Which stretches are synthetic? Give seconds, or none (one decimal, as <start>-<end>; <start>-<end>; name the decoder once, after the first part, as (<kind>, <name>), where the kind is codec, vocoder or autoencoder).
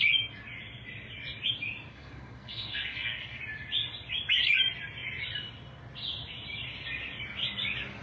1.9-3.4 (codec, SNAC)